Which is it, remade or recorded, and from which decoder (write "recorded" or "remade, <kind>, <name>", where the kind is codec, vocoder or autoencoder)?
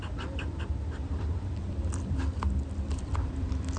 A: remade, vocoder, BigVGAN v2